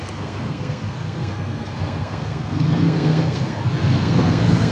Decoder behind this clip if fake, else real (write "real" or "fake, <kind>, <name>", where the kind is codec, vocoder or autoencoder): fake, codec, SNAC